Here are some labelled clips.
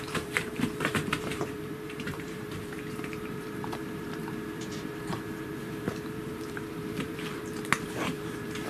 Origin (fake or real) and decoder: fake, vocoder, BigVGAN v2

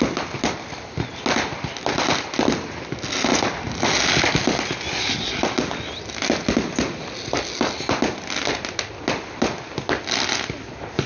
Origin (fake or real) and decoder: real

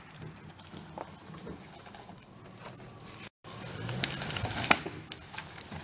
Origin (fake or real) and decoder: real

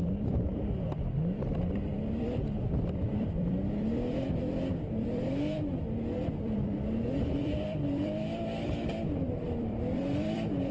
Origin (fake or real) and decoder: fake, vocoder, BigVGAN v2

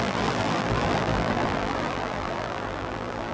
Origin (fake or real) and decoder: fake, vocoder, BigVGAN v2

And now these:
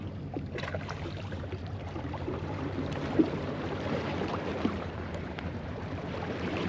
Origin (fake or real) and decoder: fake, vocoder, BigVGAN v2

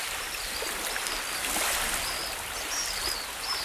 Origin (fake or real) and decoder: real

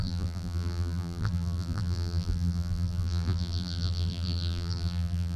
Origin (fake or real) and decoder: fake, vocoder, BigVGAN v2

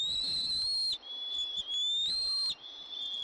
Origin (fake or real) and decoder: real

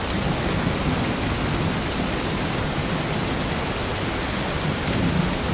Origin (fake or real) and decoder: real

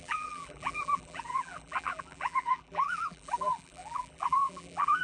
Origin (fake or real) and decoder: fake, vocoder, BigVGAN v2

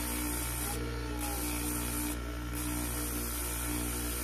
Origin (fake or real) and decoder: real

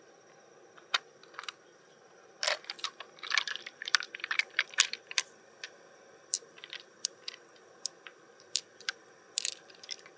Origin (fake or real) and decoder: fake, vocoder, BigVGAN v2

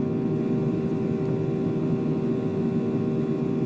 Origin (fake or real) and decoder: real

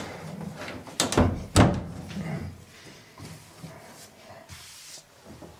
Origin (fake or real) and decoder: real